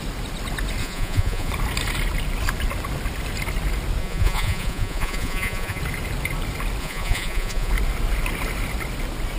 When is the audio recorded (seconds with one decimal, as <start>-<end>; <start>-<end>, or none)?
0.0-0.8; 1.5-4.0; 5.8-6.8; 7.7-9.4